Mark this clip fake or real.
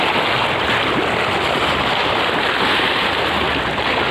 real